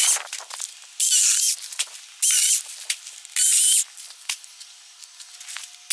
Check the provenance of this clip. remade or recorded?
recorded